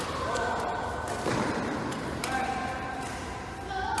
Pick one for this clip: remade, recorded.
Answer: remade